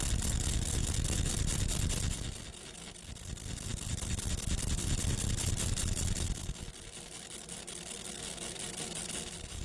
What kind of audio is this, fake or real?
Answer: real